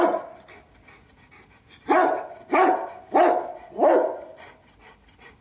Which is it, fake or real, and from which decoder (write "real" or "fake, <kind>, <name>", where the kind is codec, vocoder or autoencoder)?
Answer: real